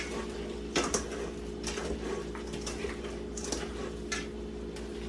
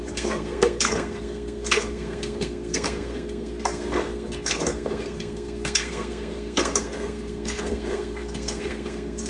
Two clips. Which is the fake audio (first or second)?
second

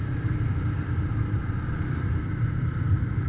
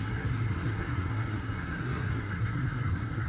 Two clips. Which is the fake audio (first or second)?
second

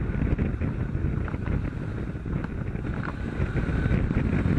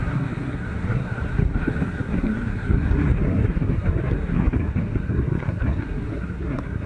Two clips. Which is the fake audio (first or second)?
second